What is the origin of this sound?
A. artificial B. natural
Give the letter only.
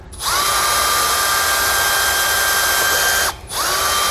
B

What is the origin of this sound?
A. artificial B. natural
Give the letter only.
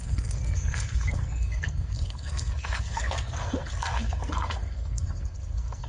A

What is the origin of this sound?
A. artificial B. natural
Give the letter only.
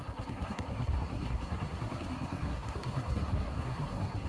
A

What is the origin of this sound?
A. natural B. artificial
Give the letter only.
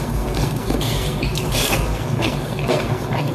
B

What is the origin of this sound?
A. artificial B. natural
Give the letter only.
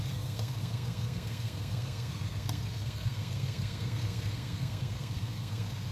A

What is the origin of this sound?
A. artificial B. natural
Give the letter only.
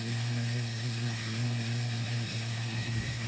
A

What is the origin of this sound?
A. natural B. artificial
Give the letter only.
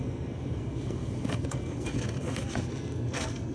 B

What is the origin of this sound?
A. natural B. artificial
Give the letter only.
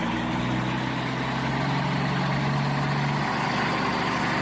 A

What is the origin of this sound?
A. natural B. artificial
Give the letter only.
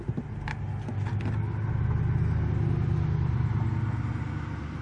A